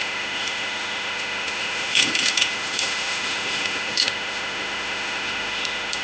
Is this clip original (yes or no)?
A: no